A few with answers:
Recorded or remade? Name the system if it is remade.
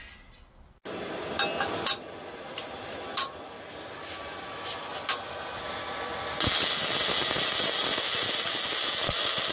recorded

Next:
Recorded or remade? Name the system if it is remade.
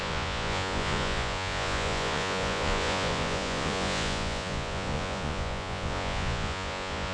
remade, vocoder, Vocos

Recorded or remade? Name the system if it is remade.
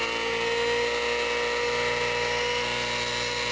recorded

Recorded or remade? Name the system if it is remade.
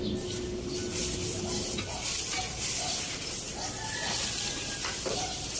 recorded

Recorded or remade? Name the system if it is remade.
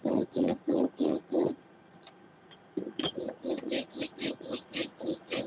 remade, vocoder, Vocos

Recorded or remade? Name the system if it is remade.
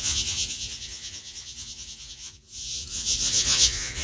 remade, vocoder, Vocos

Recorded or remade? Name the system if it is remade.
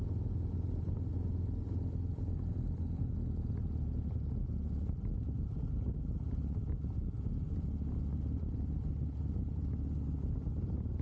recorded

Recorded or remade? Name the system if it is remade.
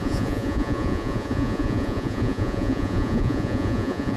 remade, vocoder, Vocos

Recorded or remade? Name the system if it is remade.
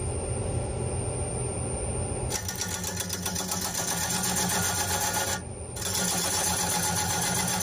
recorded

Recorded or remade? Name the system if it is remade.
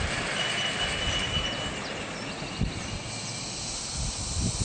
recorded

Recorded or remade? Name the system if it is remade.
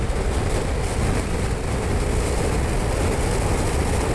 recorded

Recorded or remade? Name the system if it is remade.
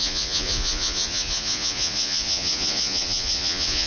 remade, vocoder, Vocos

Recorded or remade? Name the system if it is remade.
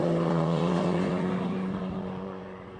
remade, vocoder, Vocos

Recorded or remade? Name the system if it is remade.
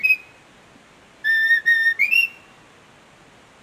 recorded